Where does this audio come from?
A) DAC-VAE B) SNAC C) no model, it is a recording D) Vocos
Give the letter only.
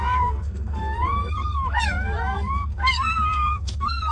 B